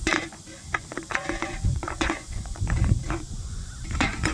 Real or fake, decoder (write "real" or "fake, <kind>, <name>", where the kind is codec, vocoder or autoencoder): fake, vocoder, Vocos